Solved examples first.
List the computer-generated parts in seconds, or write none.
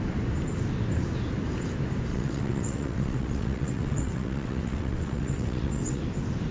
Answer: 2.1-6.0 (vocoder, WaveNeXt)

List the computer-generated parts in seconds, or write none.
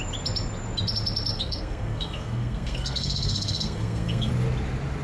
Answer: 1.3-4.3 (codec, SNAC)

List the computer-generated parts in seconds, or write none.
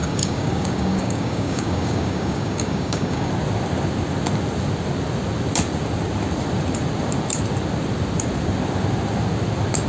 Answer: 0.0-3.3 (codec, DAC)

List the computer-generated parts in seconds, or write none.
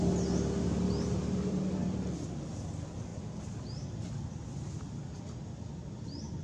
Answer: none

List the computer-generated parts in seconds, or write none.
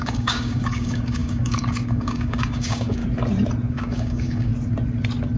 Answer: 0.0-3.0 (codec, DAC); 3.7-4.5